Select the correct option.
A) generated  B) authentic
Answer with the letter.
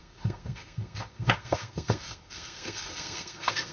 A